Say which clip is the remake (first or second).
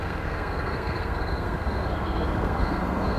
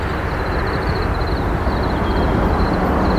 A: first